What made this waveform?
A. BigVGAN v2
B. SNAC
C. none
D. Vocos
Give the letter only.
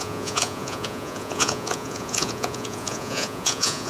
D